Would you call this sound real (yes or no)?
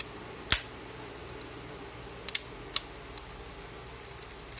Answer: yes